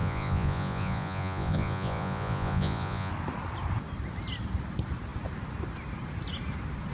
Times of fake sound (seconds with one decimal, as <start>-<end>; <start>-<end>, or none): 0.0-3.1